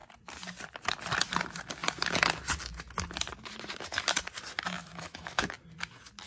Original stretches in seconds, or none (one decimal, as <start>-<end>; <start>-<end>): 0.0-4.8; 5.5-6.3